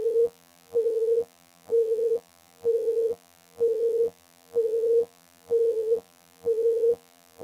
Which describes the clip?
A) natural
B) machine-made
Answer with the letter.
B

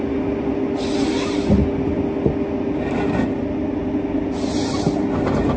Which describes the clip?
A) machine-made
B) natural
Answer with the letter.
B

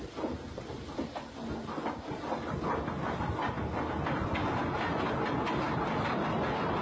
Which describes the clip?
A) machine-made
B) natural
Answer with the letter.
B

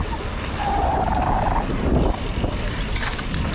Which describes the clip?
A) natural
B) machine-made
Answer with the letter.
A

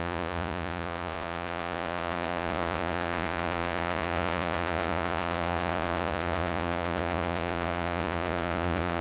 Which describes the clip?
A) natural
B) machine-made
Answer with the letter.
B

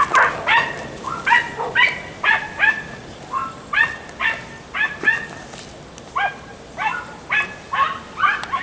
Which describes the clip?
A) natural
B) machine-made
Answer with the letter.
A